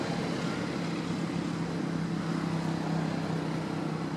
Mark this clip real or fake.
real